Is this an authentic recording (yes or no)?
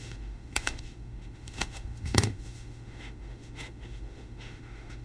no